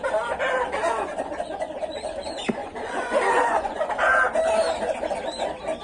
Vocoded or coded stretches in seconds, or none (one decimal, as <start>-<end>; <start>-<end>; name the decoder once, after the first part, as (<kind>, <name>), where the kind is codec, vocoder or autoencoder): 2.6-3.9 (vocoder, Vocos)